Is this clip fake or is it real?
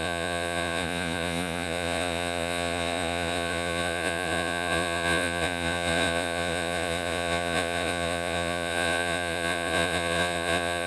fake